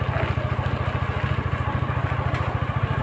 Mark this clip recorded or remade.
recorded